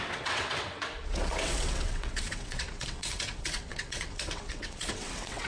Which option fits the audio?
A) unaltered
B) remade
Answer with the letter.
B